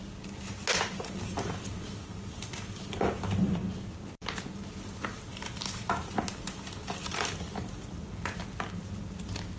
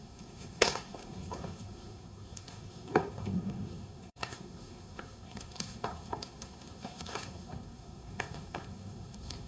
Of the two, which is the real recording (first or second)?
first